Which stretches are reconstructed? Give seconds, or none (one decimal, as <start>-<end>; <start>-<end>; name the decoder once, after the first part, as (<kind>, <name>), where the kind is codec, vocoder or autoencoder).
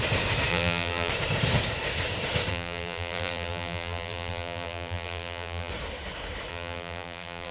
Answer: 0.5-1.1 (vocoder, BigVGAN v2); 2.5-5.7; 6.5-7.5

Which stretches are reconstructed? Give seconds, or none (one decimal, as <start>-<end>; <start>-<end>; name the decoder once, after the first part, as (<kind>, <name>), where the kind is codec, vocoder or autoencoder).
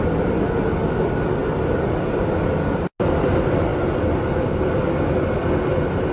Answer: none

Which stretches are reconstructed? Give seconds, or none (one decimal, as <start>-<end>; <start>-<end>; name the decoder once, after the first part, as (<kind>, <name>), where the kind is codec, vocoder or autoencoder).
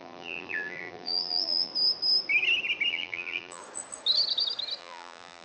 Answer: 0.0-1.7 (vocoder, BigVGAN v2); 2.9-3.6; 4.8-5.4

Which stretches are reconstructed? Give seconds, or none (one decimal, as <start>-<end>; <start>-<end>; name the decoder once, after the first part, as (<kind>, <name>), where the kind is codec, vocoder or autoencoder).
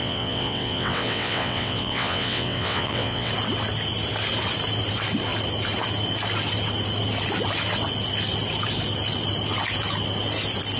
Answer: 0.0-3.3 (vocoder, WaveNeXt)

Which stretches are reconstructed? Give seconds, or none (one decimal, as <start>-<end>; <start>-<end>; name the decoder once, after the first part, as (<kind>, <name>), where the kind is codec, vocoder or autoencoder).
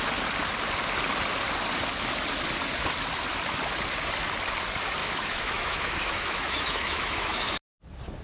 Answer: 5.0-7.6 (autoencoder, DAC-VAE)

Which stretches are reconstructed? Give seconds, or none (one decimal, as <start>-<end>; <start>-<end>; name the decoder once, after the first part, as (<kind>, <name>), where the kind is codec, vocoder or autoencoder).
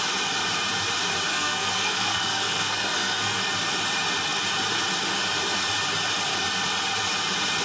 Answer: 1.3-3.4 (codec, SNAC)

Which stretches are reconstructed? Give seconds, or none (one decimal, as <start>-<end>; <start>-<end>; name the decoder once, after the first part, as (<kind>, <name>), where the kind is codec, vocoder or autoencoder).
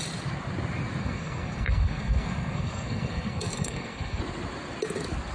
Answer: 1.0-4.2 (codec, SNAC)